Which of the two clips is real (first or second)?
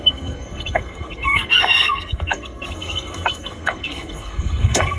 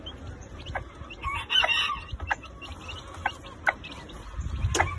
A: second